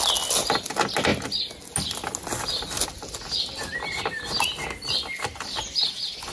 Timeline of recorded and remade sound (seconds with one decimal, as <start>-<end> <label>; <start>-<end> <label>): 0.0-6.3 recorded

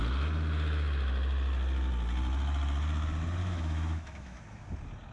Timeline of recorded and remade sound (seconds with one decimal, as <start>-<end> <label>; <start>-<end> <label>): 0.0-3.4 recorded; 3.4-4.4 remade; 4.4-5.1 recorded

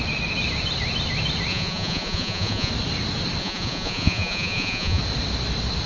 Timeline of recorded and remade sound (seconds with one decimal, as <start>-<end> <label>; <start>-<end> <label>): 0.0-1.5 recorded; 1.5-2.7 remade; 2.7-3.4 recorded; 3.4-5.0 remade; 5.0-5.9 recorded